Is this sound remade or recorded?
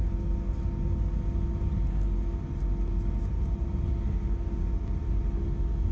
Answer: recorded